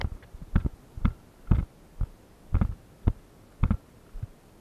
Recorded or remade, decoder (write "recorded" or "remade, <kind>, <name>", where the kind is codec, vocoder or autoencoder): recorded